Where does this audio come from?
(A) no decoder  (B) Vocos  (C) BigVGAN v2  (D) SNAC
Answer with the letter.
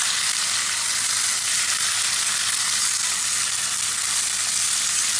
A